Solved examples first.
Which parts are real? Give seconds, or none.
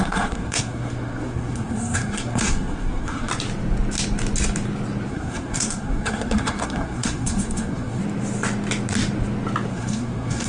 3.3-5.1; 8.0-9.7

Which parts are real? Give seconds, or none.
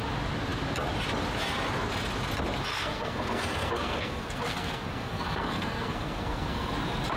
0.0-2.7; 6.7-7.2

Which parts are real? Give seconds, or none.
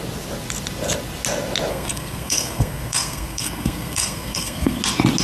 0.0-1.7; 4.8-5.2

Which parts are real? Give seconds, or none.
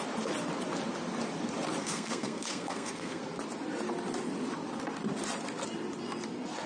0.0-1.8; 3.2-6.7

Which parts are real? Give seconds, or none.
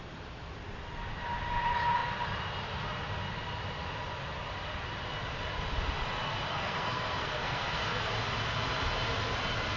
0.0-6.5; 8.1-9.8